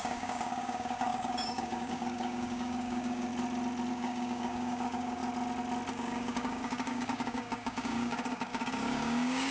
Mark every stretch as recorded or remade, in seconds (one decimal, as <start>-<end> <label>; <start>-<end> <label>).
0.0-3.3 remade; 3.3-3.9 recorded; 3.9-5.2 remade; 5.2-5.9 recorded; 5.9-9.5 remade